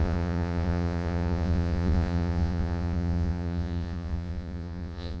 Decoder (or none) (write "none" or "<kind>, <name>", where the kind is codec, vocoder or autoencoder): vocoder, Vocos